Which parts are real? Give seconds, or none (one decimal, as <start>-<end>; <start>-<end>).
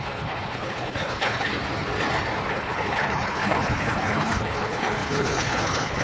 1.5-2.5